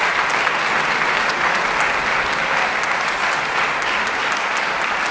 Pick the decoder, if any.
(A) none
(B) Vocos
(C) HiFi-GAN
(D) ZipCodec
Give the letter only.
A